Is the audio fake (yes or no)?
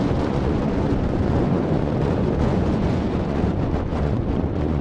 yes